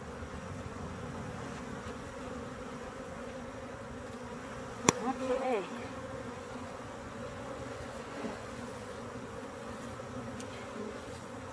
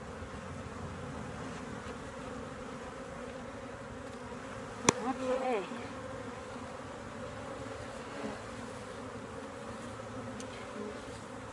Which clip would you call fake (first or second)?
first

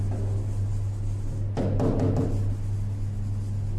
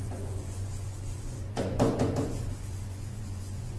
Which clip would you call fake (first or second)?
second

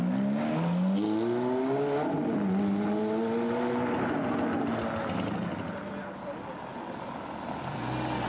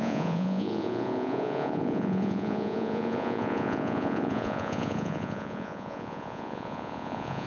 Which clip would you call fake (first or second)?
second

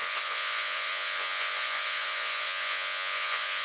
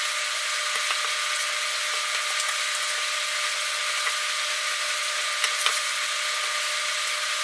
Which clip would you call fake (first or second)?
first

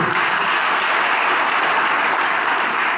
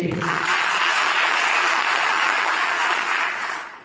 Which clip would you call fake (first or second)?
second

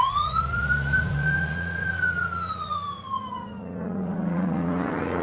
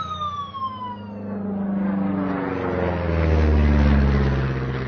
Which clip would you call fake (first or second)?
first